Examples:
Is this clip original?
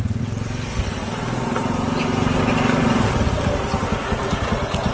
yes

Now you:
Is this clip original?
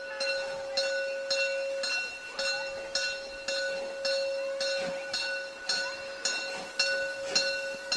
yes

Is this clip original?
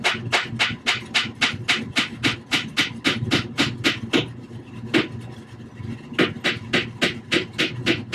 yes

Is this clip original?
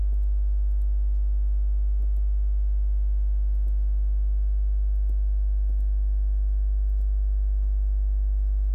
yes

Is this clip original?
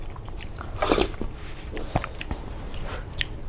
no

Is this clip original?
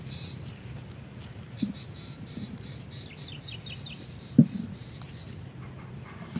no